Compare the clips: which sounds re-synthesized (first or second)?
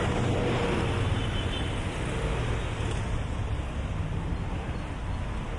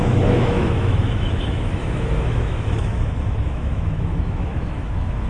second